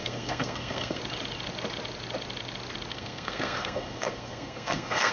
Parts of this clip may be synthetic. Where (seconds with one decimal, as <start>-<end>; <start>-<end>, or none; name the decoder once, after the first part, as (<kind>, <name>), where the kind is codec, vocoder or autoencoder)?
0.0-1.0 (codec, SNAC); 2.9-5.1